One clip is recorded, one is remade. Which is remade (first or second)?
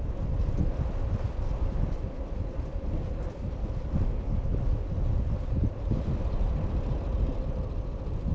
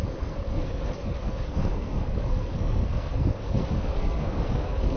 second